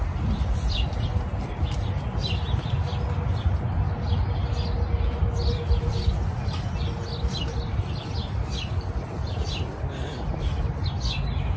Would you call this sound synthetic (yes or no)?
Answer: no